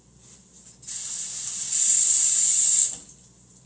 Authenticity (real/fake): real